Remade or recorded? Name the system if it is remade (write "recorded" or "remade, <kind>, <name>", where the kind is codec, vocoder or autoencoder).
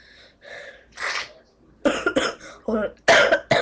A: recorded